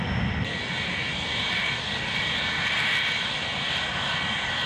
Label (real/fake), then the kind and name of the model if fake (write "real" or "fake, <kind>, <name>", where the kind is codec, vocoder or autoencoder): real